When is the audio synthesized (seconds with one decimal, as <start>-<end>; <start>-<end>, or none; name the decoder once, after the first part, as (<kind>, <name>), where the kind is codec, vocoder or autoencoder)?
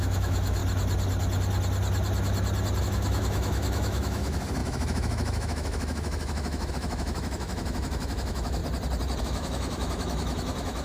0.0-0.6 (autoencoder, DAC-VAE); 2.8-8.6; 9.2-10.8